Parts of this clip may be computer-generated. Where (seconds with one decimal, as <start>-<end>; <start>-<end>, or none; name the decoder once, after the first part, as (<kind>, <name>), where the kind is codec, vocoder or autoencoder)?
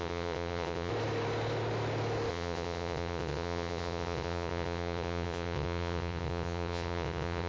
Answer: 0.0-0.9 (vocoder, WaveNeXt); 2.3-7.5